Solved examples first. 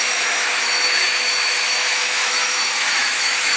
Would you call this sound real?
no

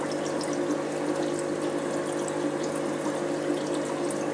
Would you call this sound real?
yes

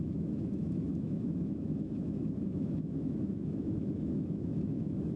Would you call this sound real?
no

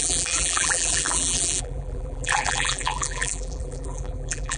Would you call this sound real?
no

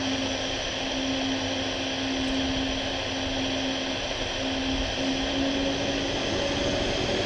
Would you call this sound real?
yes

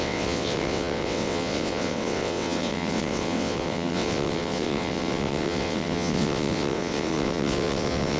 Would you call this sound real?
no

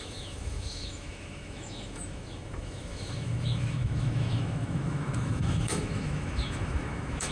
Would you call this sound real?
no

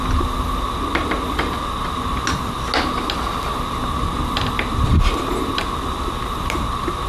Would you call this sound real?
yes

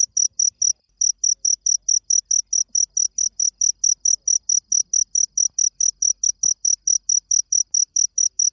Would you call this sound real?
yes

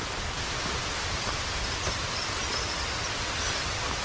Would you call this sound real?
no